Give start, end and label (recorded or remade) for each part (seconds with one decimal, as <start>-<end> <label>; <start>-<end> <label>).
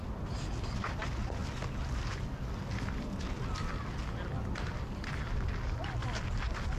0.0-6.8 recorded